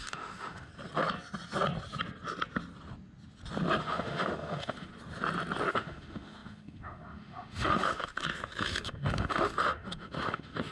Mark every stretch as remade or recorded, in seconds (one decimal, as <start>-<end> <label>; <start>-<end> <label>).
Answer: 0.0-0.7 remade; 0.7-3.8 recorded; 3.8-4.9 remade; 4.9-5.7 recorded; 5.7-10.7 remade